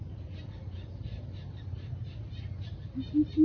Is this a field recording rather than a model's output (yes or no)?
yes